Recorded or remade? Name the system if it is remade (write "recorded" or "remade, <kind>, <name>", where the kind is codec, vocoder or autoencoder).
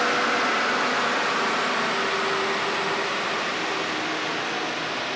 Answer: recorded